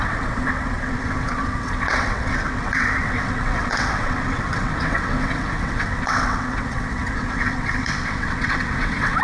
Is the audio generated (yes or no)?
yes